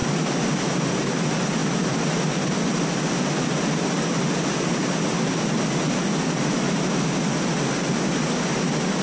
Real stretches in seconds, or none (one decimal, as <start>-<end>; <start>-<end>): 1.2-1.6; 5.8-9.0